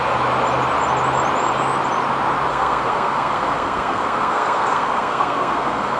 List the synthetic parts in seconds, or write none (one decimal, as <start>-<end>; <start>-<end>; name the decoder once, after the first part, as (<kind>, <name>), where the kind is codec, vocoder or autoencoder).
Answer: 2.5-6.0 (codec, SNAC)